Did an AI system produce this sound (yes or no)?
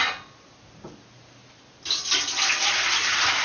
no